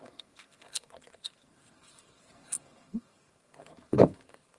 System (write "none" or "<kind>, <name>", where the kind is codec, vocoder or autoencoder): codec, SNAC